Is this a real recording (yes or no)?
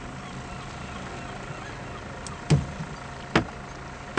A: yes